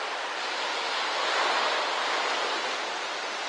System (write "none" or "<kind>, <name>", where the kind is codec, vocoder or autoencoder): none